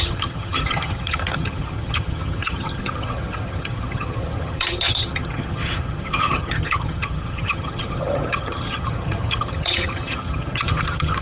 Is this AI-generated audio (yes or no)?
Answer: yes